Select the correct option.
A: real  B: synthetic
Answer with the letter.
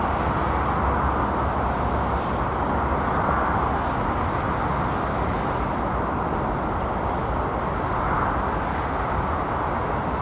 A